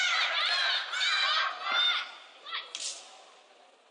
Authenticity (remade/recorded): recorded